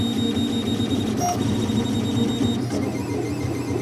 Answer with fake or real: real